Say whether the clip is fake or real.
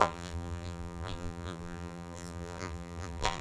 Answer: fake